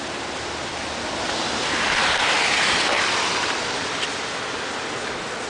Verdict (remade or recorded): recorded